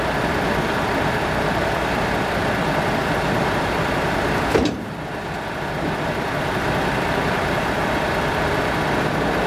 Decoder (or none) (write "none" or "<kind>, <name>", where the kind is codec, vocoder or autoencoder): vocoder, BigVGAN v2